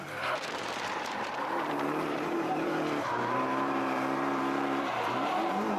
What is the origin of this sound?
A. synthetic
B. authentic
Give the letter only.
A